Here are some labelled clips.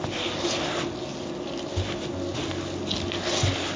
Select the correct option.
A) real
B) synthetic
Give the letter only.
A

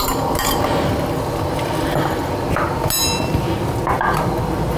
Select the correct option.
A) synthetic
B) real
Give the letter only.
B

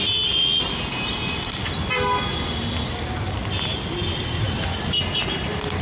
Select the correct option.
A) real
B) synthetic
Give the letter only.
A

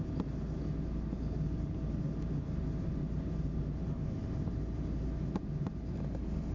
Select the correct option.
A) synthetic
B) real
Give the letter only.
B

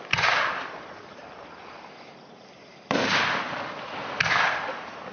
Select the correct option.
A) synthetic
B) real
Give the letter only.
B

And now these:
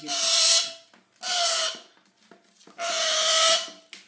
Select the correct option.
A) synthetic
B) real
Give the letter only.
B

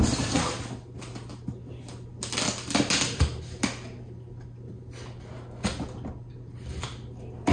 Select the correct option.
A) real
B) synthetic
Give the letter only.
A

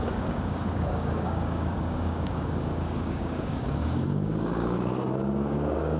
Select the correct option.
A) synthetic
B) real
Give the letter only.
A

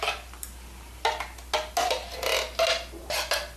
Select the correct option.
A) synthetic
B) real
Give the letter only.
B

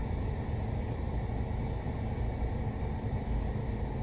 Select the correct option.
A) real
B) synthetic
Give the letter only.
A